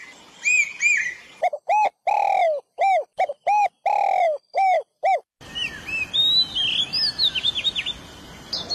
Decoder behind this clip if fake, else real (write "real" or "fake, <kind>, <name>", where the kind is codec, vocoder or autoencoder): real